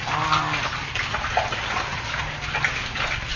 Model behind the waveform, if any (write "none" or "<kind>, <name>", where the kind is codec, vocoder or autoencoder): none